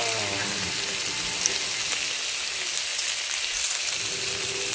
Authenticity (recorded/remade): recorded